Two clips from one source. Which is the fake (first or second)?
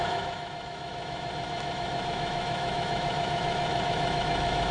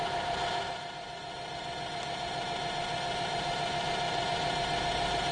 first